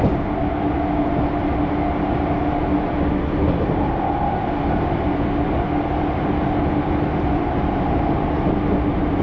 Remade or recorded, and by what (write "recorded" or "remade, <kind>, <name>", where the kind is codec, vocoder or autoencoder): recorded